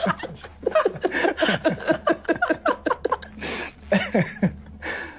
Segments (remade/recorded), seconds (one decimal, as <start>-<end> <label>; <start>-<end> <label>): 0.0-5.2 recorded

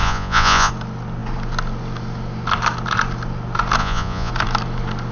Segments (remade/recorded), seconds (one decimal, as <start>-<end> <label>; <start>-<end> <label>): 0.0-0.7 remade; 0.7-3.8 recorded; 3.8-4.3 remade; 4.3-5.1 recorded

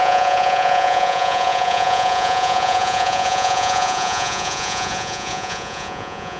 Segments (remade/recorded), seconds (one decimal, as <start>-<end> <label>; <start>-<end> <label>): 0.0-6.4 remade

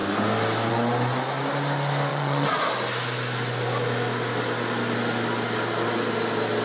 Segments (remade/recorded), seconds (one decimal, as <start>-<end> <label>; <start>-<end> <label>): 0.0-2.1 recorded; 2.1-2.7 remade; 2.7-6.6 recorded

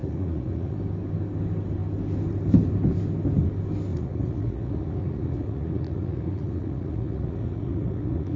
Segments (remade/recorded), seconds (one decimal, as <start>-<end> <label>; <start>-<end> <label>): 0.0-0.8 remade; 0.8-3.9 recorded; 3.9-8.4 remade

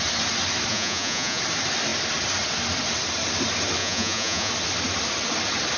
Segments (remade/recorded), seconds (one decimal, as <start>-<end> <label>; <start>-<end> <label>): 0.0-0.7 recorded; 0.7-1.4 remade; 1.4-3.8 recorded; 3.8-4.5 remade; 4.5-5.8 recorded